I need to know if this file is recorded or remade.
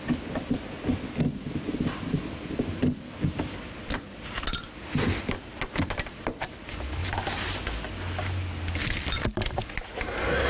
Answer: recorded